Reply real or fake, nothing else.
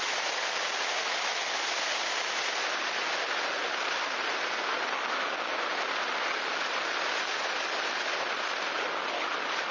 real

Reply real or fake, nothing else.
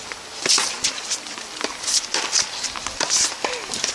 real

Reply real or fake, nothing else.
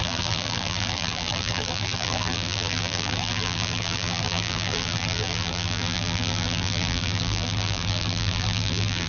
fake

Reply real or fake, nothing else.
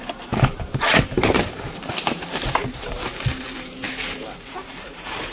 fake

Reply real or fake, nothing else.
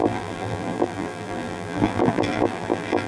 fake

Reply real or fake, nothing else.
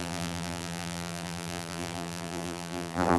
fake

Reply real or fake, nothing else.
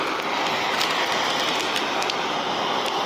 real